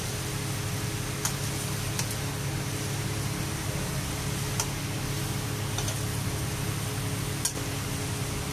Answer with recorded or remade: recorded